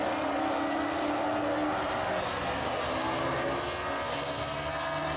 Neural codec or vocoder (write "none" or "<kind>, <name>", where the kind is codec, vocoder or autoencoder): none